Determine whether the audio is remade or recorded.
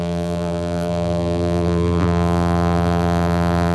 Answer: remade